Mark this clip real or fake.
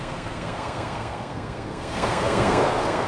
fake